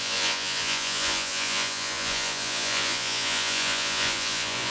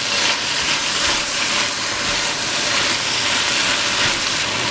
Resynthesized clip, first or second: first